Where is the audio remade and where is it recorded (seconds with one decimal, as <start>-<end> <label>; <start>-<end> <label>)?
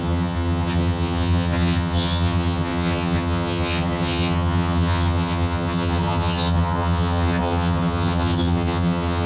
0.0-9.3 remade